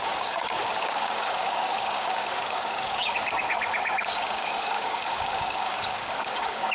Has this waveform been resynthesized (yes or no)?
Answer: yes